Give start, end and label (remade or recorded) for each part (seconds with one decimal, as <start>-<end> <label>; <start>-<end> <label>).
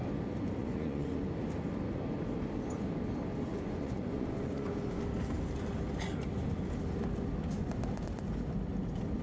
0.0-0.6 recorded; 0.6-1.2 remade; 1.2-3.5 recorded; 3.5-4.7 remade; 4.7-9.2 recorded